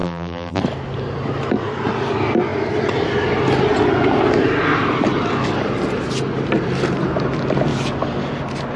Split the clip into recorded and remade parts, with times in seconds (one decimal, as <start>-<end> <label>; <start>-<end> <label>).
0.0-0.6 remade; 0.6-8.8 recorded